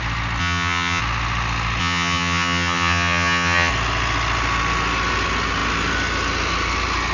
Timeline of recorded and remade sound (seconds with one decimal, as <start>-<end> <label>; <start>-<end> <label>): 0.0-0.4 recorded; 0.4-1.0 remade; 1.0-1.8 recorded; 1.8-3.7 remade; 3.7-7.1 recorded